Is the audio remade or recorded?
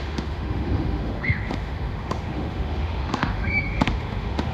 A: remade